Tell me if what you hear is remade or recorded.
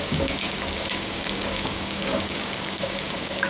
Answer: remade